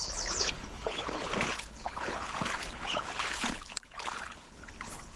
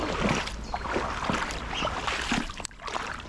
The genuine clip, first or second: second